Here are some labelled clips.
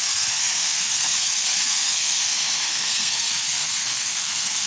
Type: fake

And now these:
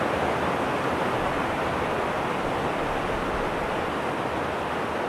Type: real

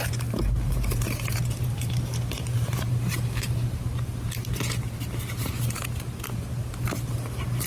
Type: fake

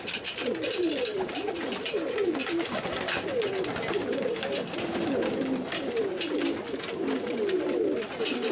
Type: real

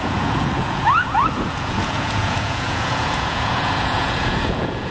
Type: fake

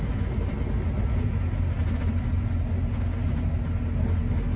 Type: real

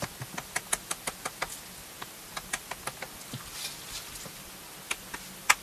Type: real